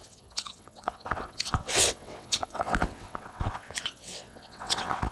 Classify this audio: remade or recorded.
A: remade